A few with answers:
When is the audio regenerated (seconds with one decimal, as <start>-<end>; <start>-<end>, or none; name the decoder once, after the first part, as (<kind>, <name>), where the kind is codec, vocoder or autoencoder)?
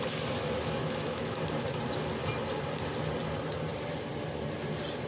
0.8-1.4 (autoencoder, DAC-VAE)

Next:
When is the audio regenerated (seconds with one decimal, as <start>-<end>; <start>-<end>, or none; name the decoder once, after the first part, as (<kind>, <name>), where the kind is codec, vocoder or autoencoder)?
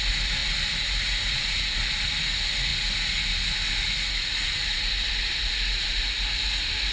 none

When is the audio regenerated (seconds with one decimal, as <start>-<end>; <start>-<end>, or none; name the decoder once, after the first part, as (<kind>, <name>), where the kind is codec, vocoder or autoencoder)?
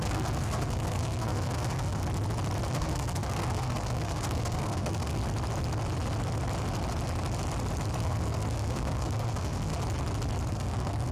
0.0-2.0 (codec, SNAC); 2.7-5.2; 8.0-9.7; 10.5-11.1